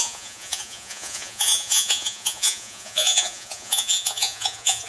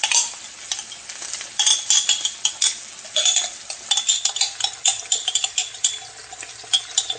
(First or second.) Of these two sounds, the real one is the second